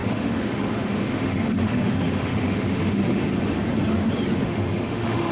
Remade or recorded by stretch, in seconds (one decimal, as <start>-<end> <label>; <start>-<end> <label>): 0.0-3.2 remade; 3.2-4.4 recorded; 4.4-5.3 remade